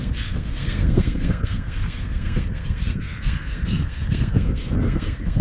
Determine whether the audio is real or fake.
fake